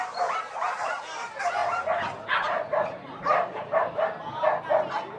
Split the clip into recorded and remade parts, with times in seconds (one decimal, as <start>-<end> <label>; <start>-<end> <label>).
0.0-5.2 recorded